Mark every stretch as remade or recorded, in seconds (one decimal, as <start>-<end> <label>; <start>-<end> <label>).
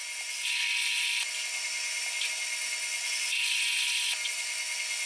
0.0-5.1 recorded